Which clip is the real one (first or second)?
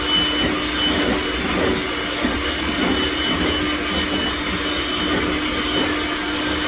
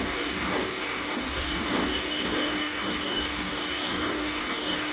first